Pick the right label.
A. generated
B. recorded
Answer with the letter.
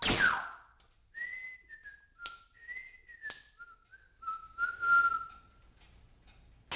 B